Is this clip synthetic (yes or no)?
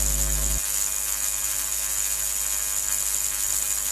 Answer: no